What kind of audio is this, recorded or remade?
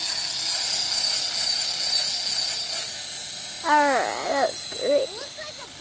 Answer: recorded